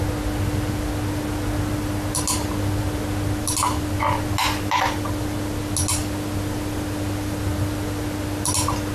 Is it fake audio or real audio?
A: real